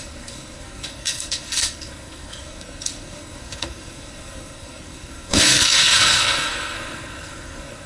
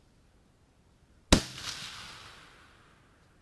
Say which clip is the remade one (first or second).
first